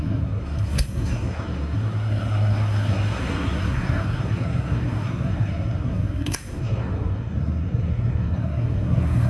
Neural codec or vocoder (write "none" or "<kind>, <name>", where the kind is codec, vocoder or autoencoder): codec, SNAC